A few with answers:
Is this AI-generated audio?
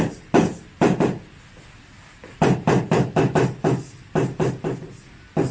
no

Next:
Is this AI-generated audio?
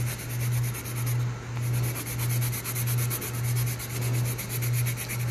no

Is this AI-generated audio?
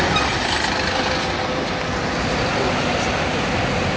no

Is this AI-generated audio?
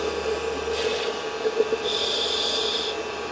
no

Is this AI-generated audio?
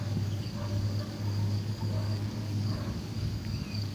yes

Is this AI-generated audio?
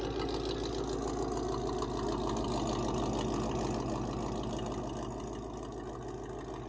no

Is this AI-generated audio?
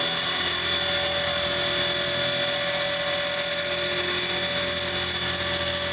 no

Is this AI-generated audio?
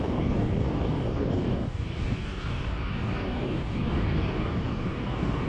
yes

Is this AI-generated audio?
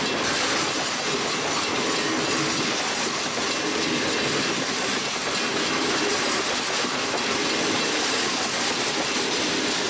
no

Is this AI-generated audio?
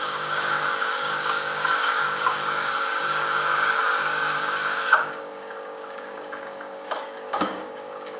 yes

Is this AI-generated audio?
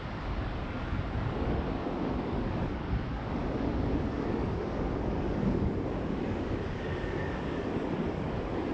yes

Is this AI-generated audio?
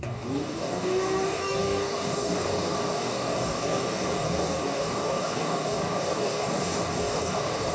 yes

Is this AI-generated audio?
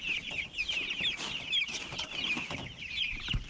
no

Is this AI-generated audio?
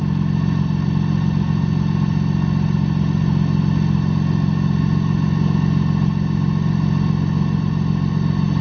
no